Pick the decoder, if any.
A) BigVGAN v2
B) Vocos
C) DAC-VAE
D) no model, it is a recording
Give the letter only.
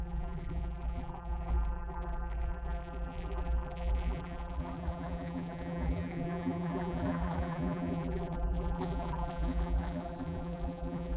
A